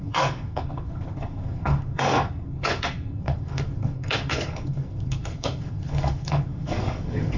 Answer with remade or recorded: remade